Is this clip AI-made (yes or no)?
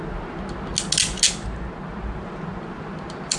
no